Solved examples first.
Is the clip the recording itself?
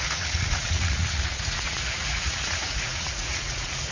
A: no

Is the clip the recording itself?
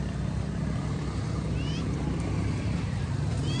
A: yes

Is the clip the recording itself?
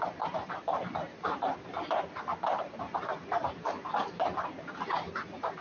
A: no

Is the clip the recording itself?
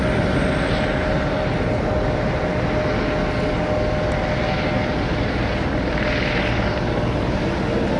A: yes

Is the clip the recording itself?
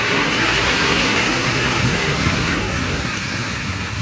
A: no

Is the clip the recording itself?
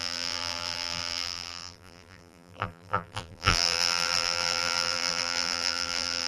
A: no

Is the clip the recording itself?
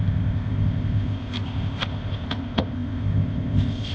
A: no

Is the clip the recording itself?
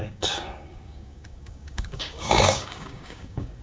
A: no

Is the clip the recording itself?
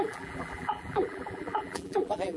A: no